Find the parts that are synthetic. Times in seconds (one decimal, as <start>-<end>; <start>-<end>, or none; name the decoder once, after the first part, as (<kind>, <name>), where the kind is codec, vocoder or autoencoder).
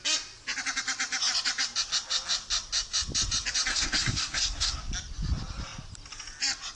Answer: 3.7-4.8 (codec, SNAC)